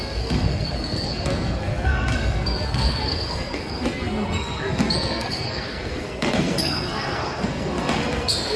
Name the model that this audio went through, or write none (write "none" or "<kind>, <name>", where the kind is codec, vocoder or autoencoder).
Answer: codec, SNAC